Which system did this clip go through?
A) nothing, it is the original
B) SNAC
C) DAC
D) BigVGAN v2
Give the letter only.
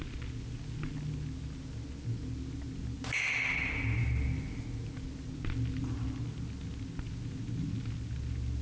A